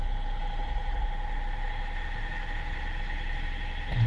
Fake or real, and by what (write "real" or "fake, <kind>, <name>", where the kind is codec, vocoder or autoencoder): real